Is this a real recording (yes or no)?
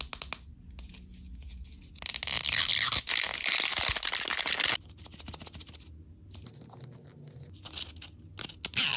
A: yes